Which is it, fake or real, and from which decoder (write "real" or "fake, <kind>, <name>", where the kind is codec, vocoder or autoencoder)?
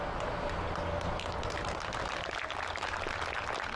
real